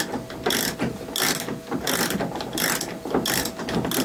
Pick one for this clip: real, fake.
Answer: real